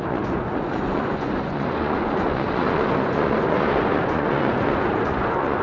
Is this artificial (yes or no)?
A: yes